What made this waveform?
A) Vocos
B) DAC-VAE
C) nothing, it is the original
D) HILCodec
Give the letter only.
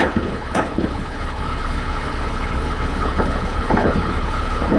D